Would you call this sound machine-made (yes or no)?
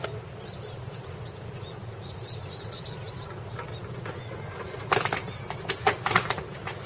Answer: yes